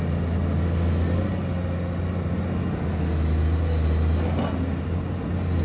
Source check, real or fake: real